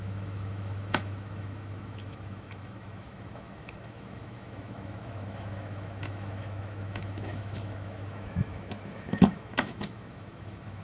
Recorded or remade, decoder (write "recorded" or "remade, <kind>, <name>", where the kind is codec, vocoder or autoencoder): remade, autoencoder, DAC-VAE